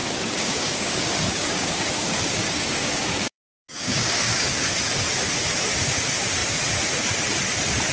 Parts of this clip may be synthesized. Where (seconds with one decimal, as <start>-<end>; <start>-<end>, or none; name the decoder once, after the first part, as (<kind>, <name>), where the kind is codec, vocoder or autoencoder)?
0.0-4.7 (codec, DAC)